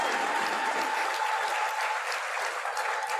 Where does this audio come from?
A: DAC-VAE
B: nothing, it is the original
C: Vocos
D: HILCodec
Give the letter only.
B